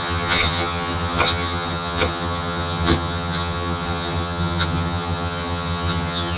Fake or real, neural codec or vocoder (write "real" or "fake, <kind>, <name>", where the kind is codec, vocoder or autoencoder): fake, vocoder, HiFi-GAN